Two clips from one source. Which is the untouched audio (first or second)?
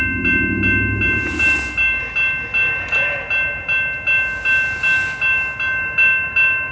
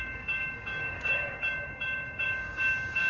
first